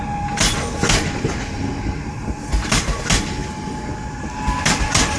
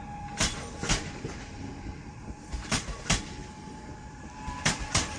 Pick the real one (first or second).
first